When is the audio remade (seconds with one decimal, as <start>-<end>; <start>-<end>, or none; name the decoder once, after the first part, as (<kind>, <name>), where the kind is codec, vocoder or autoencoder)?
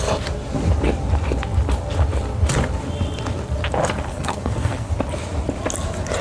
4.1-4.9 (codec, SNAC)